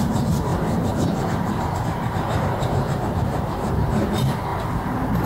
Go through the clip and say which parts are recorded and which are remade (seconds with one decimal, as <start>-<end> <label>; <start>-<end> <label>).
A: 0.0-5.3 remade